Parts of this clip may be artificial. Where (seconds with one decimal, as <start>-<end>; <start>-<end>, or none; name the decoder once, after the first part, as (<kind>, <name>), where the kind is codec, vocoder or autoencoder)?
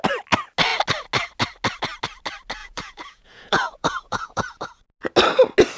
2.6-4.7 (vocoder, Vocos)